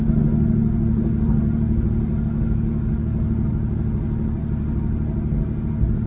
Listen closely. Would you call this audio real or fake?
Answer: real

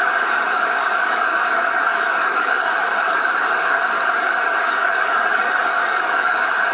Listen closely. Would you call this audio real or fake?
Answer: fake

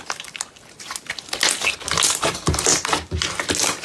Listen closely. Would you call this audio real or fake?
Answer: real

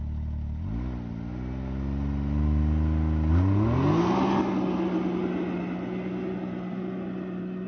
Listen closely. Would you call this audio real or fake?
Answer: real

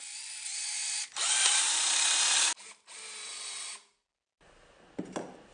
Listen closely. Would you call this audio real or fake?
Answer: real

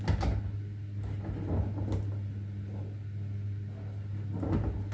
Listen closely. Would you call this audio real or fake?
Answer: real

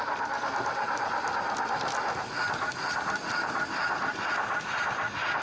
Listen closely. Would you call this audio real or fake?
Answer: real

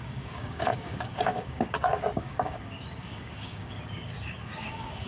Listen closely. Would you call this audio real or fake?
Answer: fake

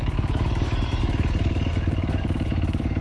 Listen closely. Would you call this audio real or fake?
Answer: fake